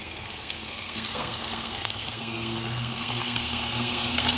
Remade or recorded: remade